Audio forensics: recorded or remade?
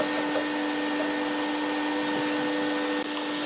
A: recorded